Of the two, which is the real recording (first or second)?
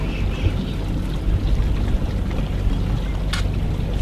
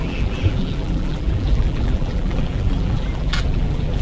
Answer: first